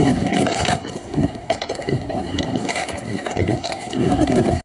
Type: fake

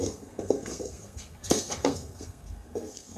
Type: fake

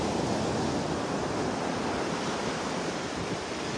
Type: real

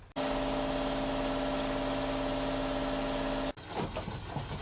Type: real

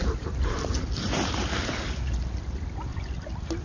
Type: real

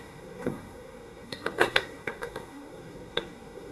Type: fake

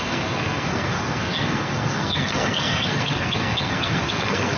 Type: fake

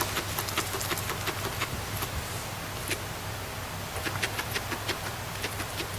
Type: real